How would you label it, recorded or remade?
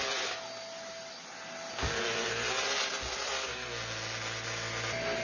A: recorded